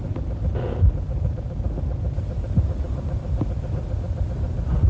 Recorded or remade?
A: remade